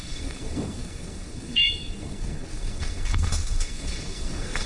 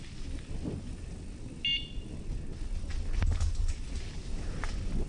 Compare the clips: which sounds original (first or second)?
second